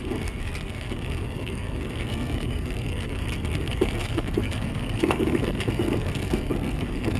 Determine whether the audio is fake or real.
fake